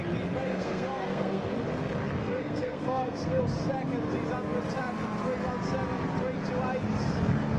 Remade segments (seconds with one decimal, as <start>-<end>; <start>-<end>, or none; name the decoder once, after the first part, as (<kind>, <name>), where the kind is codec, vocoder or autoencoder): 0.5-1.4 (codec, SNAC); 2.2-3.4